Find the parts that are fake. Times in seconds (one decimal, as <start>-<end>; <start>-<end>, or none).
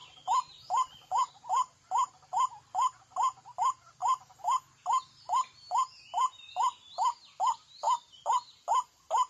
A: 4.0-4.6